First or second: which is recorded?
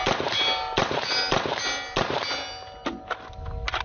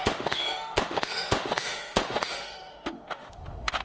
first